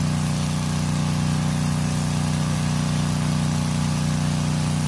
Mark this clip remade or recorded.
recorded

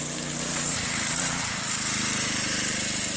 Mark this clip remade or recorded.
recorded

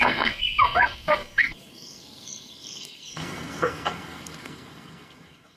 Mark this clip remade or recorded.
remade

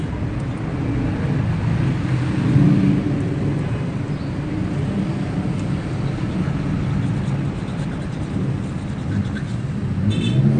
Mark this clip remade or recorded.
recorded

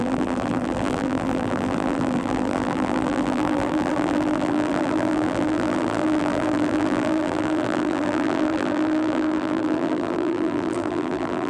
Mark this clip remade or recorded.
remade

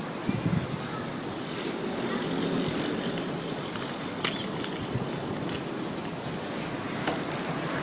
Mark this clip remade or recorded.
recorded